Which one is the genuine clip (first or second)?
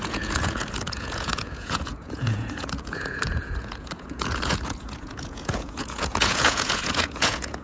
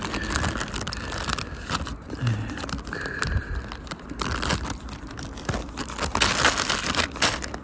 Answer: second